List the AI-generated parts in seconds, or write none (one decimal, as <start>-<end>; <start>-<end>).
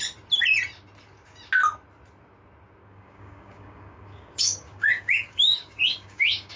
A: 2.8-6.6